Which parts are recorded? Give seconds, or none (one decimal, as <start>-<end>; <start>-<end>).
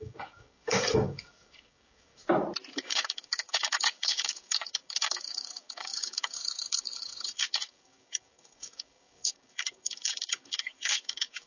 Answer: 2.2-2.7